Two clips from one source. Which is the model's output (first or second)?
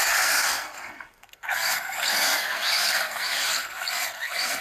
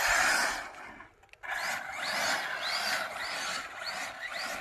first